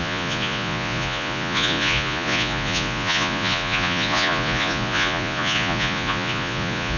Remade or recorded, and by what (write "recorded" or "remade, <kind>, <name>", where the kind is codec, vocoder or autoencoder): remade, vocoder, Vocos